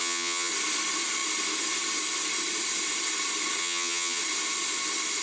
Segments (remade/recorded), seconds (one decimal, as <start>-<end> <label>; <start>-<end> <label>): 0.0-0.5 remade; 0.5-3.6 recorded; 3.6-4.2 remade; 4.2-5.2 recorded